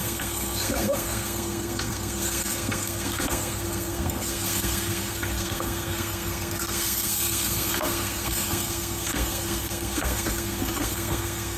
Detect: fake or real fake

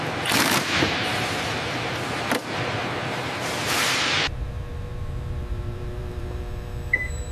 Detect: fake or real fake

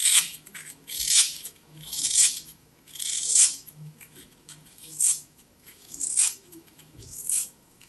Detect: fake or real fake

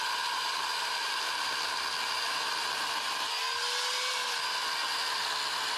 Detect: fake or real real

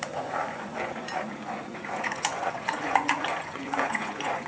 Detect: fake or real fake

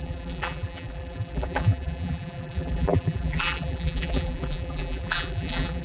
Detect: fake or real fake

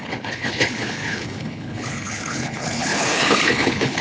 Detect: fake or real fake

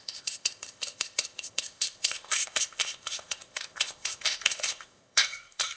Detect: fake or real fake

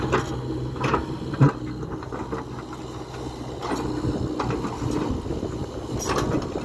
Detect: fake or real real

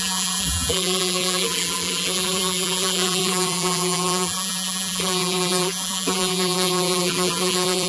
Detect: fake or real fake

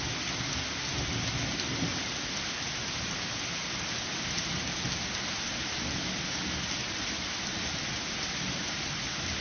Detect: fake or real real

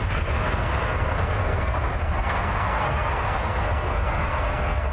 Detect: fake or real fake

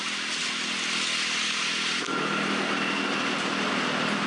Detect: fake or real real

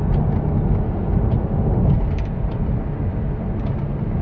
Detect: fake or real real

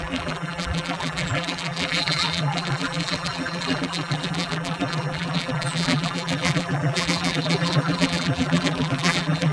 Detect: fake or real fake